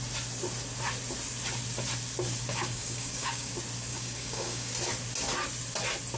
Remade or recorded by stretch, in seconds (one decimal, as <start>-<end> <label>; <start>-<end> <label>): 0.0-2.5 recorded; 2.5-3.5 remade; 3.5-3.9 recorded; 3.9-4.7 remade; 4.7-6.2 recorded